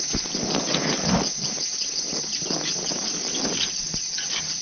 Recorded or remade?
recorded